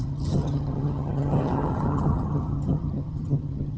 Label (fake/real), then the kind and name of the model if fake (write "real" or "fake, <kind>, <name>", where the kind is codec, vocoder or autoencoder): fake, vocoder, HiFi-GAN